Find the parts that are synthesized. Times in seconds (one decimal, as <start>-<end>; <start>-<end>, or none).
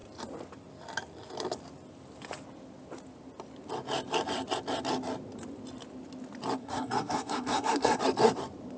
6.6-8.0